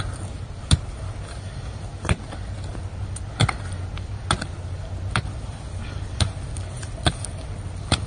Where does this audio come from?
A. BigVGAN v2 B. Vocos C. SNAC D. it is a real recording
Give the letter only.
D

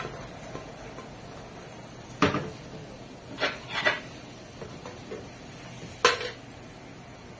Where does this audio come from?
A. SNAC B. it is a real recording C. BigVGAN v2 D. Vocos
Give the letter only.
B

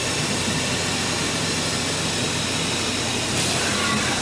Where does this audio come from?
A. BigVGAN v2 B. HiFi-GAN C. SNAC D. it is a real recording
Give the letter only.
D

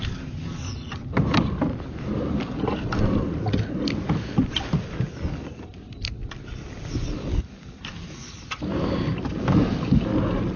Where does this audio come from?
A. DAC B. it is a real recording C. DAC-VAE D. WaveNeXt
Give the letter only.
B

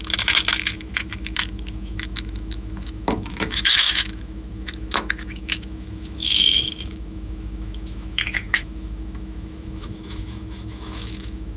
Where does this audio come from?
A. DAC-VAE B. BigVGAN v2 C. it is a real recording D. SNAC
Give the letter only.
A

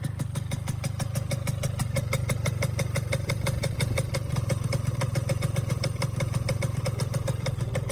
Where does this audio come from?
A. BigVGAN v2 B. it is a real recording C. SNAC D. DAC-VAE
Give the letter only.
B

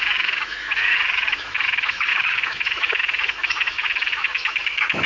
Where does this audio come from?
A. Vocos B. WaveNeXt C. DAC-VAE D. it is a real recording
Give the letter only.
C